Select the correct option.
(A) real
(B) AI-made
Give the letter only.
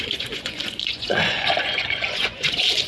B